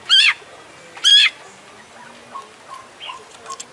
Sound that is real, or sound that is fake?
real